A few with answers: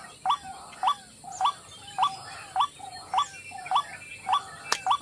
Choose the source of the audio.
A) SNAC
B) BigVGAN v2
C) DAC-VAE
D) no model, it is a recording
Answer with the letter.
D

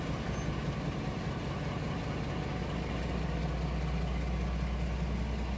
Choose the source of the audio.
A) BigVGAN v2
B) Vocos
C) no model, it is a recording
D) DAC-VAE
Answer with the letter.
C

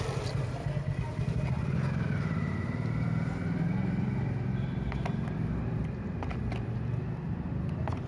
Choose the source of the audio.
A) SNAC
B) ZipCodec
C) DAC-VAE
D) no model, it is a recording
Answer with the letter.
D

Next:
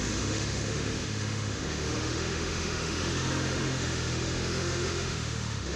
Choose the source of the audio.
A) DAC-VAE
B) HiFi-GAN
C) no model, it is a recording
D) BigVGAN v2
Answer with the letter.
A